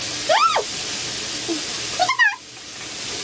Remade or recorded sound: recorded